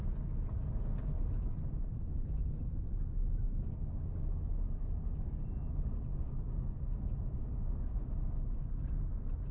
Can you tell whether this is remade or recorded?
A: recorded